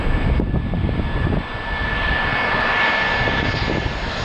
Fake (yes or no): no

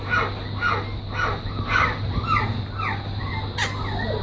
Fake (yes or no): no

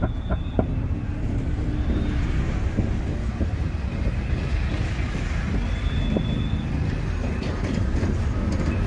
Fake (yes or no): no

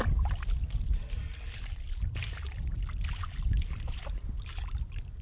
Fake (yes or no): no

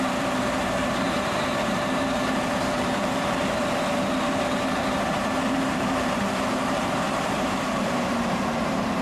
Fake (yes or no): yes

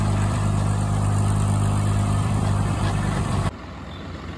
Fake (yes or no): yes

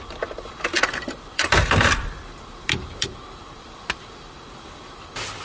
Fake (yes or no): yes